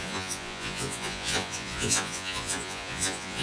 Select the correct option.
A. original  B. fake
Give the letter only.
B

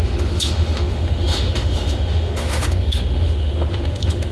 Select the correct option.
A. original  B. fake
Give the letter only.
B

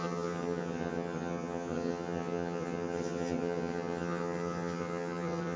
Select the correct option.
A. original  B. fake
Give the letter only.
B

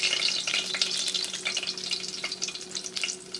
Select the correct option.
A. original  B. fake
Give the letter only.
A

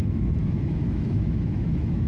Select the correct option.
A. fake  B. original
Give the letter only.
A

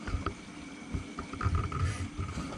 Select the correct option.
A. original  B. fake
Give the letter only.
B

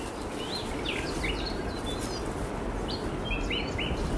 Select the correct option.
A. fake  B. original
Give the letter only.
B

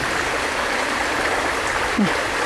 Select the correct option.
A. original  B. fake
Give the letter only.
A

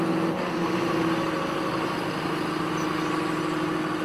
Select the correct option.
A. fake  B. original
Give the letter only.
B